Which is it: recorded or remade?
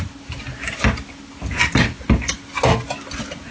recorded